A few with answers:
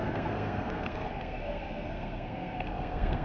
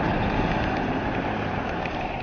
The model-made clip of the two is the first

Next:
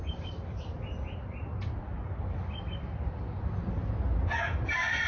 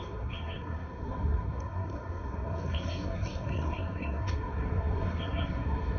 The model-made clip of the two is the second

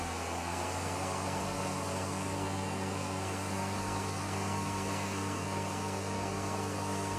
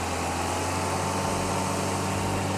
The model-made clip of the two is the first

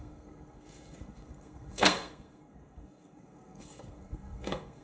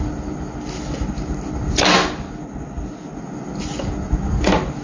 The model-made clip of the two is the first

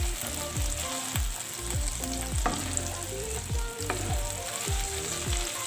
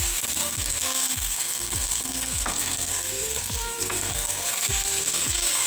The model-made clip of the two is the second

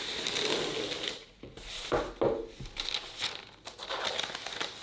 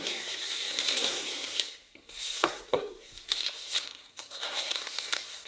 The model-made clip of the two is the second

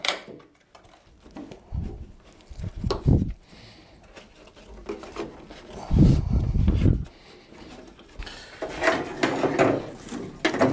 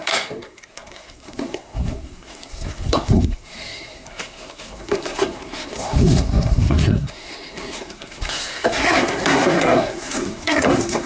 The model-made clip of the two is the second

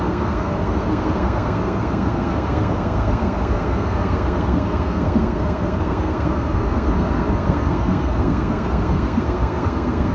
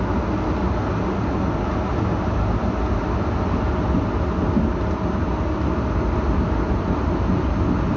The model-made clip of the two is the first